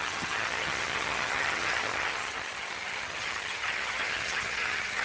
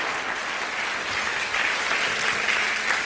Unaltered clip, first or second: second